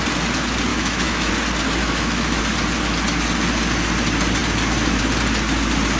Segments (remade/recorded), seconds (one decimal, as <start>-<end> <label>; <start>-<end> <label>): 0.0-0.7 recorded; 0.7-1.3 remade; 1.3-1.8 recorded; 1.8-2.4 remade; 2.4-6.0 recorded